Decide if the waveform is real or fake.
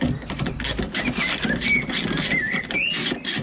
fake